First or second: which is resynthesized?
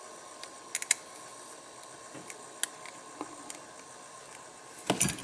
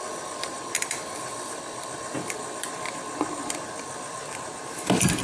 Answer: second